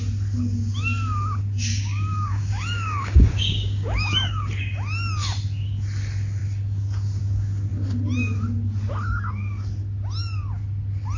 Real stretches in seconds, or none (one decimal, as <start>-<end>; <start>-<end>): 0.0-1.7; 4.5-11.2

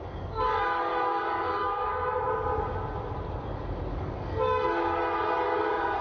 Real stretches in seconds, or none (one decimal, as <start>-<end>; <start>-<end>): 2.5-3.9; 5.0-5.6

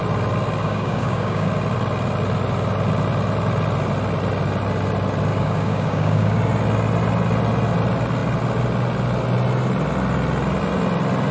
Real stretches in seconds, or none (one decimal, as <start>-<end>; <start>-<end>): 0.0-0.6; 1.5-5.3; 6.4-11.3

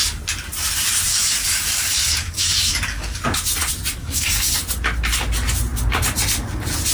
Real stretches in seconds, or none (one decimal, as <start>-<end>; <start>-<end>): 0.0-1.1; 3.2-4.0; 4.6-6.9